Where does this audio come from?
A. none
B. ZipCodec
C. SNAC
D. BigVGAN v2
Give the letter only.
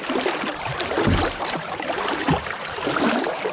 A